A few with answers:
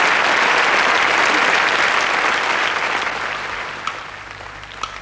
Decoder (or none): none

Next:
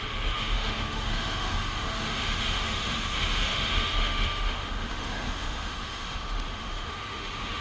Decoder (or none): autoencoder, DAC-VAE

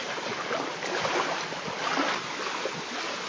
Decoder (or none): none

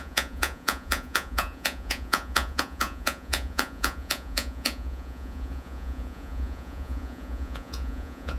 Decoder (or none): vocoder, Vocos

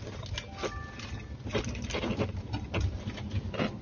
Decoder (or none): none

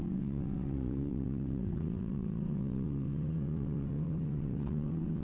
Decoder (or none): vocoder, WaveNeXt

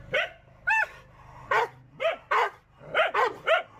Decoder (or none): none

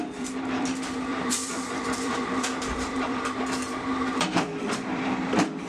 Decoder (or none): vocoder, BigVGAN v2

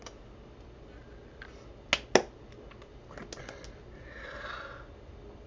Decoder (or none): none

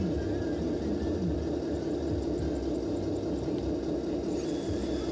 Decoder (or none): none